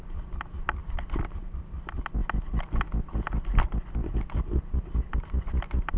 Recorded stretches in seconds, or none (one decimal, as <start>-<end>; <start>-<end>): 0.0-6.0